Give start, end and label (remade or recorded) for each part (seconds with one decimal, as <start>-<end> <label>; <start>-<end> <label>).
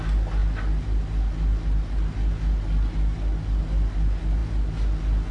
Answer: 0.0-5.3 recorded